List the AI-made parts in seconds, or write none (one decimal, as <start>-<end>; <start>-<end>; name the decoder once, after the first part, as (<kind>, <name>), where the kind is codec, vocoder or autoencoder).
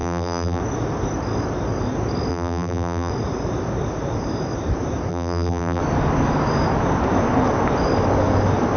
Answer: 0.0-0.6 (vocoder, BigVGAN v2); 2.3-3.1; 5.1-5.8